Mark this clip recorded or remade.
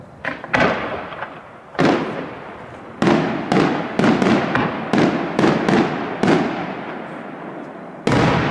recorded